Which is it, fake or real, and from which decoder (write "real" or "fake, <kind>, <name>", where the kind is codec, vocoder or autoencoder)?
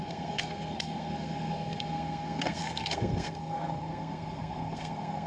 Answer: fake, codec, SNAC